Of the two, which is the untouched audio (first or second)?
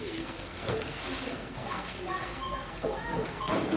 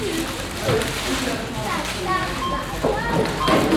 second